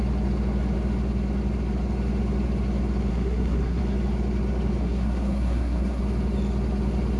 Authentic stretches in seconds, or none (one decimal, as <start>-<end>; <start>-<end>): 0.0-3.1; 3.8-4.8; 6.0-7.2